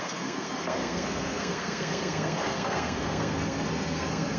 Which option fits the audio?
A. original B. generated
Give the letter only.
B